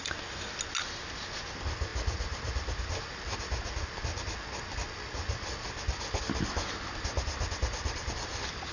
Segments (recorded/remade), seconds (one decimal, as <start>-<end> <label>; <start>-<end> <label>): 0.0-8.7 recorded